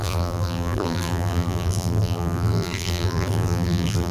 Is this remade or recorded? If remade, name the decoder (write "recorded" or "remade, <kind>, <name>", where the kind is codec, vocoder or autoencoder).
remade, vocoder, BigVGAN v2